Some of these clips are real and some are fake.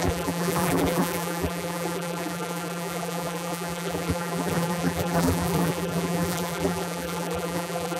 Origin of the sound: fake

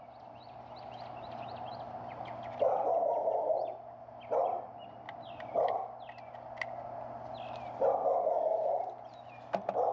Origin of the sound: real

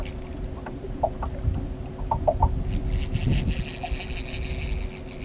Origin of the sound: real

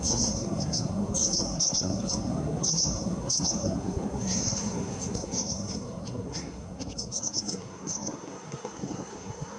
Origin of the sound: fake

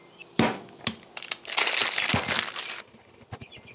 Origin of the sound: real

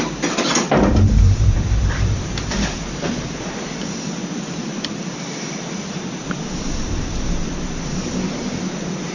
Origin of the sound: fake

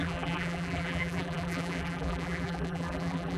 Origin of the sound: fake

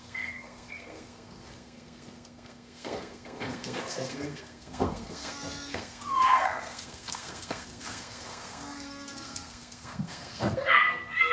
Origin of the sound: fake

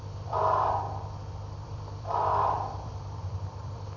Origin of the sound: fake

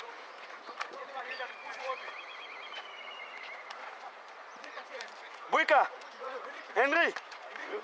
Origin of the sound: fake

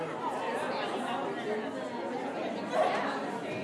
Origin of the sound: real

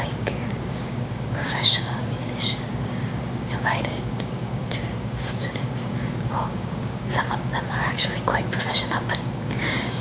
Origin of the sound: fake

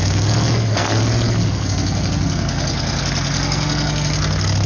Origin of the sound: fake